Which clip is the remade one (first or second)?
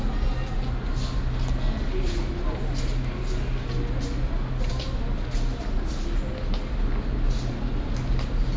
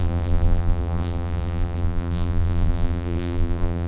second